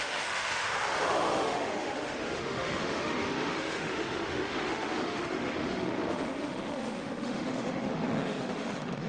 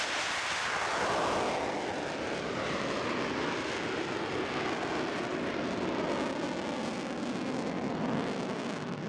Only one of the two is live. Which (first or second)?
second